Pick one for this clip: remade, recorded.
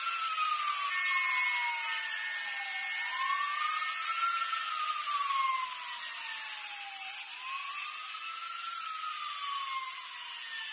recorded